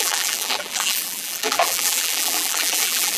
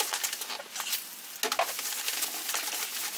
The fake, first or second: first